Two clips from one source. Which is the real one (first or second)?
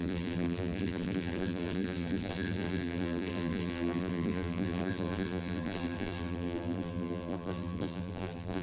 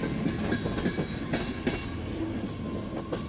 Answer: second